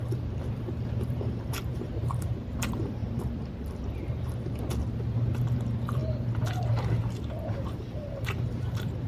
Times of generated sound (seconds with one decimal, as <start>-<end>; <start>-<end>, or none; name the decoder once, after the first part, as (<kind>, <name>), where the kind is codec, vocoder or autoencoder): 0.0-3.0 (vocoder, BigVGAN v2); 4.0-9.1